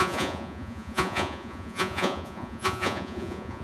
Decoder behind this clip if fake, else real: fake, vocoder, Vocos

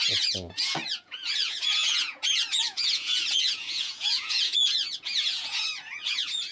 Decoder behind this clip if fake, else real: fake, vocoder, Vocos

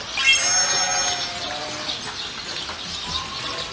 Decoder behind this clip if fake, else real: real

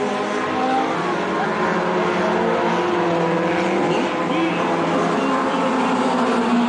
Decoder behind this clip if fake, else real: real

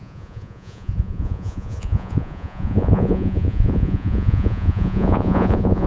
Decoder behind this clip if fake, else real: fake, vocoder, Vocos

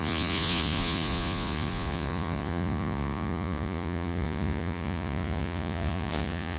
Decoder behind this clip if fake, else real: fake, vocoder, Vocos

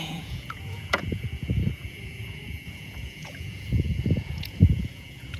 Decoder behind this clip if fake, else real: fake, vocoder, Vocos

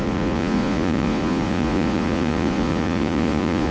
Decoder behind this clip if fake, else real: fake, vocoder, Vocos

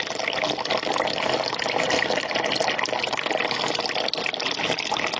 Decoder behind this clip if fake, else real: real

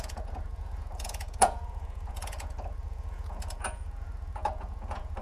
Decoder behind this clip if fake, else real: fake, vocoder, Vocos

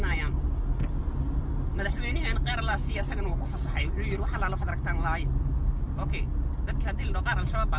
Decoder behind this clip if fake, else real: real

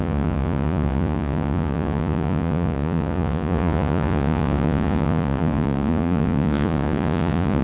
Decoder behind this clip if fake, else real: fake, vocoder, Vocos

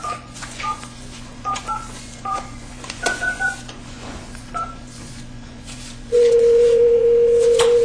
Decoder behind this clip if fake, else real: fake, vocoder, Vocos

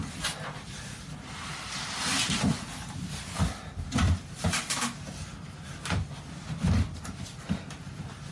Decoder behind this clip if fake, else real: real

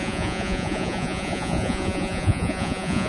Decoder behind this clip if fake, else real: fake, vocoder, Vocos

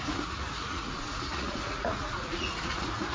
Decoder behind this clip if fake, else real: fake, vocoder, Vocos